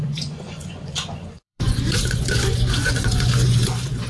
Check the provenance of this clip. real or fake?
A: fake